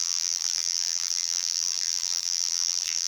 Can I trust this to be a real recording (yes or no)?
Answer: no